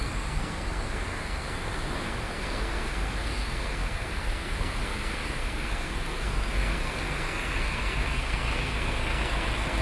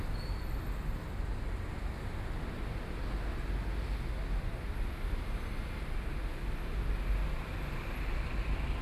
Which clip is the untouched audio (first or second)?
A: second